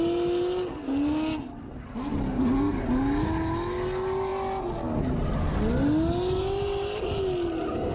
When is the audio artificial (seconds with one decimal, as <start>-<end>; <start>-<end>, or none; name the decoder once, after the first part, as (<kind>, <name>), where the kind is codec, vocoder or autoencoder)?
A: none